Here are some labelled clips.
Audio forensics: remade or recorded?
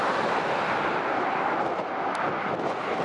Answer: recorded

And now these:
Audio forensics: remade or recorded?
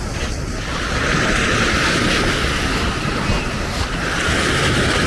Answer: recorded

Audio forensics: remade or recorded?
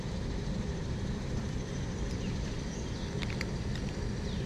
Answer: remade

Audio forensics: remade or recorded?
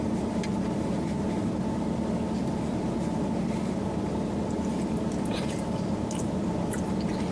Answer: remade